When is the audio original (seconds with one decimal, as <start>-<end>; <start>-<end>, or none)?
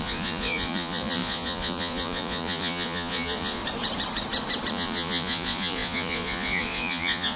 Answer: 3.6-4.7